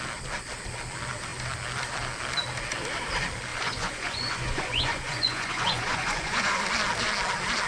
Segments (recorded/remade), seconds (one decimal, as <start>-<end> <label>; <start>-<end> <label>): 0.0-3.5 recorded; 3.5-6.6 remade; 6.6-7.7 recorded